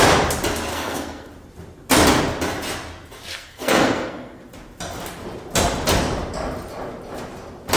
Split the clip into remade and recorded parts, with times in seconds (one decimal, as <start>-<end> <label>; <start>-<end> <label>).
0.0-0.7 recorded; 0.7-1.3 remade; 1.3-3.3 recorded; 3.3-4.4 remade; 4.4-7.8 recorded